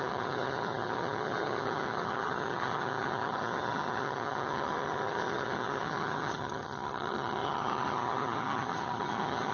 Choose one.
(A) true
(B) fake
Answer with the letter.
B